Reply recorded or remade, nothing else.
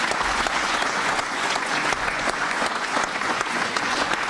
remade